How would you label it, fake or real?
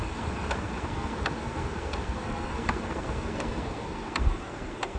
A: fake